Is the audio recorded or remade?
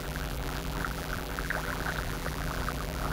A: remade